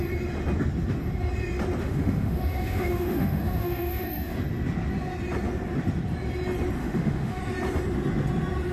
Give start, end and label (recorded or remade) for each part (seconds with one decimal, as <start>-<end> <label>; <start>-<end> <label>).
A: 0.0-1.8 recorded; 1.8-4.4 remade; 4.4-6.8 recorded; 6.8-7.4 remade; 7.4-8.7 recorded